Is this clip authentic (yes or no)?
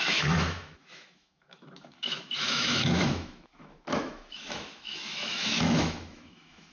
no